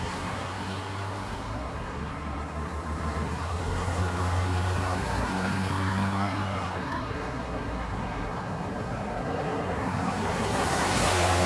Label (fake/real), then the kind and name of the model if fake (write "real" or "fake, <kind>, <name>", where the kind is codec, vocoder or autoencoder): fake, codec, SNAC